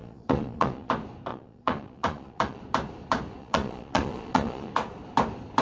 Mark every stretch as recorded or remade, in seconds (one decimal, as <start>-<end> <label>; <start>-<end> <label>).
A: 0.0-0.9 remade; 0.9-1.3 recorded; 1.3-2.6 remade; 2.6-3.4 recorded; 3.4-4.7 remade; 4.7-5.6 recorded